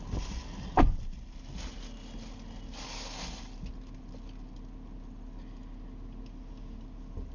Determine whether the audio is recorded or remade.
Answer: recorded